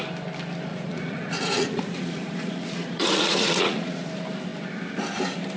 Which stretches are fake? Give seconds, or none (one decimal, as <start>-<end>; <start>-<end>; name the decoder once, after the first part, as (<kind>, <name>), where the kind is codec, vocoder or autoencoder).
0.7-4.1 (vocoder, Vocos)